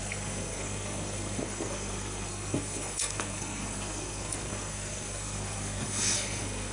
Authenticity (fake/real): fake